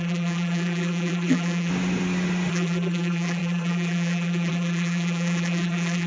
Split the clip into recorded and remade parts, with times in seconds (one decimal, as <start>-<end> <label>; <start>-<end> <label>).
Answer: 0.0-1.7 remade; 1.7-2.5 recorded; 2.5-6.1 remade